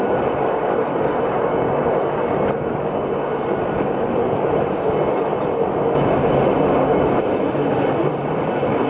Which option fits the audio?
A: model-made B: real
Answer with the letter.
B